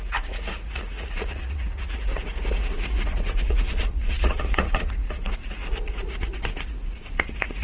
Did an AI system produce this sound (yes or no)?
yes